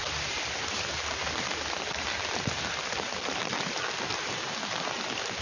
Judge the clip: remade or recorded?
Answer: recorded